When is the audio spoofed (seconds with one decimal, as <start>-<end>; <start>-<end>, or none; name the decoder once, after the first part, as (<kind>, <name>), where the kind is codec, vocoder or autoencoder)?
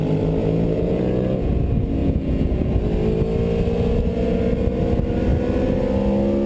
0.4-1.5 (vocoder, Vocos); 2.0-2.8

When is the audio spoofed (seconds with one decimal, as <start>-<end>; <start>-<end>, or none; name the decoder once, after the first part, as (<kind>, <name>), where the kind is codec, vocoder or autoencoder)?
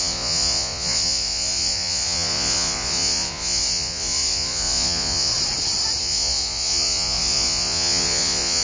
0.0-5.3 (vocoder, Vocos); 6.0-8.6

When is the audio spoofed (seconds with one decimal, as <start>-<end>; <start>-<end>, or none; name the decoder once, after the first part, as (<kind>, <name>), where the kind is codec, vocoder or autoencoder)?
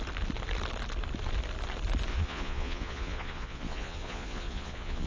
2.1-5.1 (vocoder, Vocos)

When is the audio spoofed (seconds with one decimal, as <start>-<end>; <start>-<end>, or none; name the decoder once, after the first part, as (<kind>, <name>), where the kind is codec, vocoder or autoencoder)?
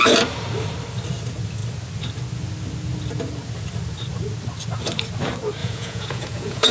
5.6-6.7 (vocoder, Vocos)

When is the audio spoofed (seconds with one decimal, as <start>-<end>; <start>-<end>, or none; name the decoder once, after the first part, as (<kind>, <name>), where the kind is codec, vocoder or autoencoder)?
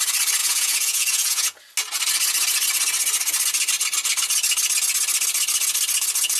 0.4-1.6 (vocoder, Vocos)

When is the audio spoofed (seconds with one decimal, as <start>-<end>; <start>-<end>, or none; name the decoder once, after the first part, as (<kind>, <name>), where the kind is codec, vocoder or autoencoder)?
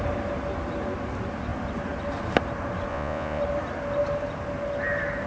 2.9-3.4 (vocoder, Vocos)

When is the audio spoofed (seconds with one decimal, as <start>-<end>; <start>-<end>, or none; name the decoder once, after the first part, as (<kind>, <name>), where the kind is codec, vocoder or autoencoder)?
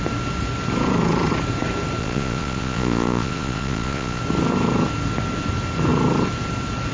2.0-4.2 (vocoder, Vocos)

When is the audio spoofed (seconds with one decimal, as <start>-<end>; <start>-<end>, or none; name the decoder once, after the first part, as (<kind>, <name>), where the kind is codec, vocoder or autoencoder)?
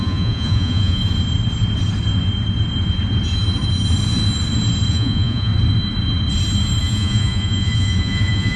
0.0-1.0 (vocoder, Vocos); 4.9-5.5; 6.8-8.6